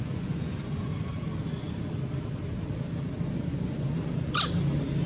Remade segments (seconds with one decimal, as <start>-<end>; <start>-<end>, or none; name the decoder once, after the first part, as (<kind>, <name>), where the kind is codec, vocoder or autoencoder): 0.0-0.9 (vocoder, Vocos); 3.3-4.3